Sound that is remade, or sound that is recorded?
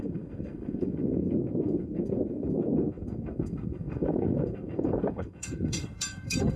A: remade